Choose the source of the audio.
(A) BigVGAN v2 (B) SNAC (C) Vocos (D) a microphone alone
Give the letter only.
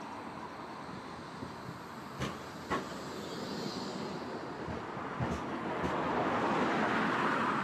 D